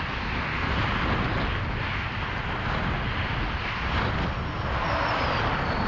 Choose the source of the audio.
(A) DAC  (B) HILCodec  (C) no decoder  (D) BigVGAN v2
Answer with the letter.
C